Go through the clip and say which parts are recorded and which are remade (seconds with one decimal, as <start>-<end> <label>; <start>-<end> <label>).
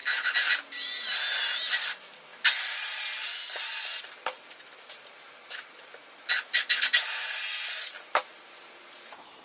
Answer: 0.0-9.4 recorded